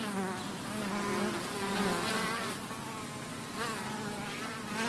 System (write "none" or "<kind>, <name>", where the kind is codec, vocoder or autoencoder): none